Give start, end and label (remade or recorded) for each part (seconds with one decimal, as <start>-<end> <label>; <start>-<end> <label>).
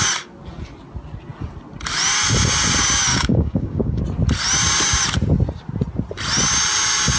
0.0-3.1 recorded; 3.1-4.0 remade; 4.0-7.2 recorded